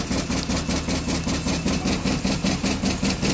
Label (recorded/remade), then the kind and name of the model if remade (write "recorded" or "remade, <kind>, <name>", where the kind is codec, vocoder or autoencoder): recorded